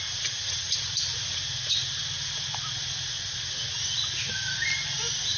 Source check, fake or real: real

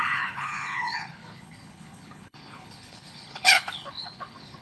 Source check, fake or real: fake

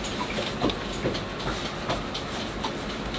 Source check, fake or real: real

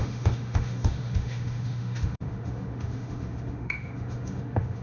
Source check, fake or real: fake